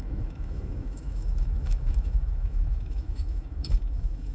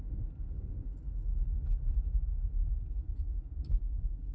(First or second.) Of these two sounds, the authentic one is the second